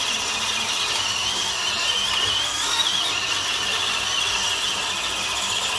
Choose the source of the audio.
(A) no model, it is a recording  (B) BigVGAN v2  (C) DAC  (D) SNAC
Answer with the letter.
A